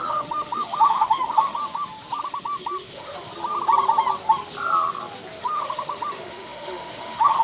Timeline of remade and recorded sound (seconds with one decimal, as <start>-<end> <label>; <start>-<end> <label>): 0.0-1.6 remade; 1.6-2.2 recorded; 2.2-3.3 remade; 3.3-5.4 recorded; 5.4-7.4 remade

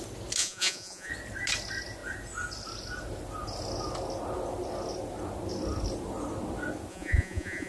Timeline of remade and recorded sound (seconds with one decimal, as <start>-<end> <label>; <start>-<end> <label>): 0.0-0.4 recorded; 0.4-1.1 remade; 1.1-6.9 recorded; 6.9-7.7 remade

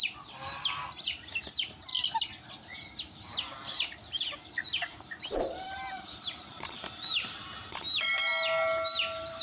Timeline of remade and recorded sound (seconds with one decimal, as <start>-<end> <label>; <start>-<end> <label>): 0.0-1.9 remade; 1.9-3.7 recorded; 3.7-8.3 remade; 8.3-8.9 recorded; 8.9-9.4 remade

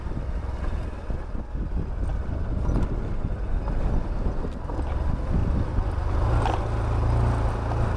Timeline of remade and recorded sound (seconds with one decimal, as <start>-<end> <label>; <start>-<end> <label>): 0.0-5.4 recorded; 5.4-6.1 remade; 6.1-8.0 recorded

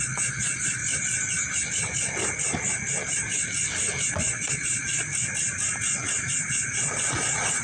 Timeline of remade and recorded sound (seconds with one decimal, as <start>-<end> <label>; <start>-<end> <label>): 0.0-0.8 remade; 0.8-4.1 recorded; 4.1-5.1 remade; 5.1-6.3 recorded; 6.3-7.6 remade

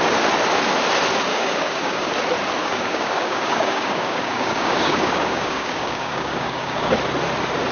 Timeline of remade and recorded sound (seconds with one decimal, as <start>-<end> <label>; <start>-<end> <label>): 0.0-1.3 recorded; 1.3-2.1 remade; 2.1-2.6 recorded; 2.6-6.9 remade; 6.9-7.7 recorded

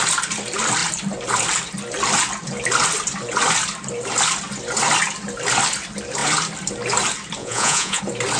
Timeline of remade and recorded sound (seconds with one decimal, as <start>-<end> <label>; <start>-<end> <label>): 0.0-7.4 recorded; 7.4-8.0 remade; 8.0-8.4 recorded